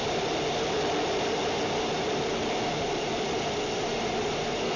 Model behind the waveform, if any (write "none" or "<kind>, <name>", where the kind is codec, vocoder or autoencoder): none